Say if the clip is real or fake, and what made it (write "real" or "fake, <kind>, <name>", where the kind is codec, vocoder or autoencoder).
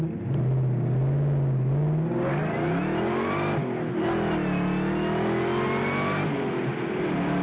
real